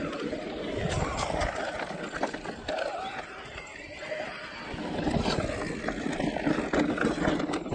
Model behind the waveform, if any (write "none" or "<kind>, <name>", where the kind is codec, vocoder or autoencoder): none